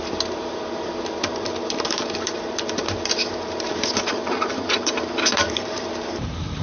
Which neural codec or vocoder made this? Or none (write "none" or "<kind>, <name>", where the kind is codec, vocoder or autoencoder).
vocoder, BigVGAN v2